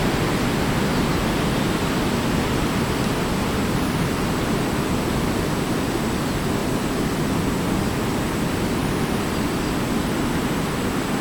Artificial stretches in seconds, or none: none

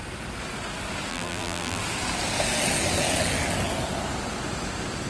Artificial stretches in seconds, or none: 1.1-1.8 (vocoder, BigVGAN v2)

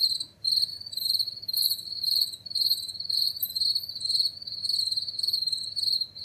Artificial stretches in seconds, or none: 0.7-3.6 (vocoder, BigVGAN v2)

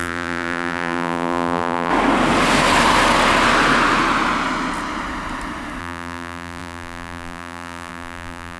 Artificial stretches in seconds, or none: 0.0-1.9 (vocoder, BigVGAN v2); 5.8-8.6

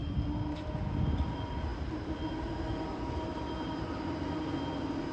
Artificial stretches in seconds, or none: 0.0-0.9 (vocoder, BigVGAN v2)

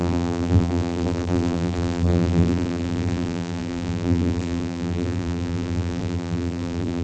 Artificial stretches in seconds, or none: 0.0-7.0 (vocoder, BigVGAN v2)

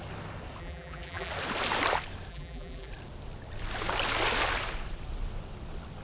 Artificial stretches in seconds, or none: 0.6-1.3 (vocoder, BigVGAN v2); 2.3-2.9